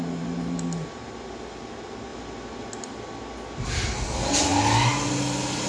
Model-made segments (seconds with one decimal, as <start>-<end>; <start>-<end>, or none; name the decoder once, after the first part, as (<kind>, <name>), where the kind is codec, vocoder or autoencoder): none